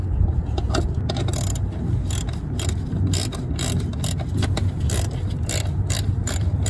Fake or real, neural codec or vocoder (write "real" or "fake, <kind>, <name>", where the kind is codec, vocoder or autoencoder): real